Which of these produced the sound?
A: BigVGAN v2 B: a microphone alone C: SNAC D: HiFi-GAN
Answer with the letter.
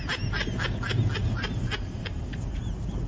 B